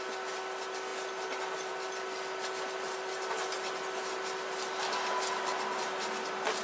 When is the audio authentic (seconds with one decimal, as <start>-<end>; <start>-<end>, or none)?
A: 0.0-6.6